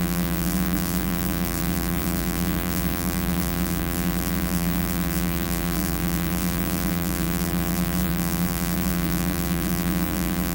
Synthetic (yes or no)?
yes